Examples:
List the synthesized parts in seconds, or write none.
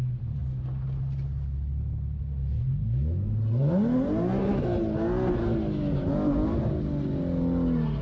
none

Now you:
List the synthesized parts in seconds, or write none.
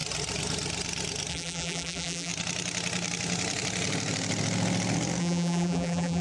1.3-2.3 (vocoder, BigVGAN v2); 5.2-6.2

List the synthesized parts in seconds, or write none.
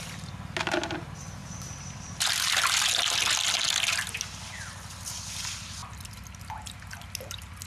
5.8-6.4 (vocoder, BigVGAN v2)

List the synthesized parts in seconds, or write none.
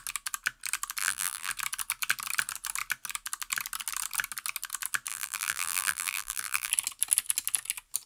1.0-1.5 (vocoder, BigVGAN v2); 5.1-6.7